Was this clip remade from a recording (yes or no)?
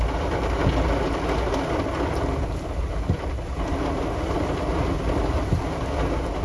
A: no